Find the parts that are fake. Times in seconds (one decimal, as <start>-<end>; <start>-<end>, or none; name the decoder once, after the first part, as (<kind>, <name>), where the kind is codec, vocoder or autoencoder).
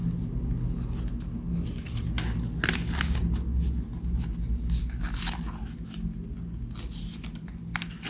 none